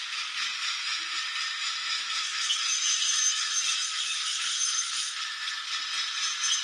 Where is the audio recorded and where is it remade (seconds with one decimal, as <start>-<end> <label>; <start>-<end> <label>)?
0.0-0.5 recorded; 0.5-1.2 remade; 1.2-1.6 recorded; 1.6-5.6 remade; 5.6-6.6 recorded